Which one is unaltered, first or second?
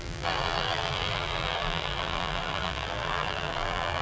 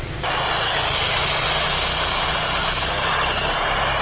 second